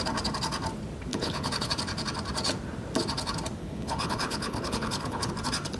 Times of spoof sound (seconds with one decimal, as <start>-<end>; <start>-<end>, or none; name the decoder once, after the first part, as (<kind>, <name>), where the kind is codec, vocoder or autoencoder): 1.1-1.7 (codec, HILCodec); 3.6-5.3